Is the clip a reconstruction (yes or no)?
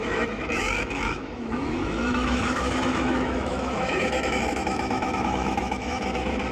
yes